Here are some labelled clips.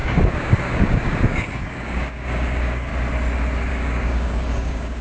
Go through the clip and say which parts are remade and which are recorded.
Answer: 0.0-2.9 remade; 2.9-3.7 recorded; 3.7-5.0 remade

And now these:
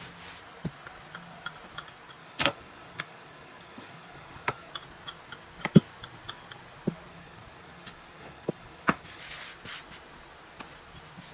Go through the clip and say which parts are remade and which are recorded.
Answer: 0.0-2.2 recorded; 2.2-4.7 remade; 4.7-7.1 recorded; 7.1-9.2 remade; 9.2-11.3 recorded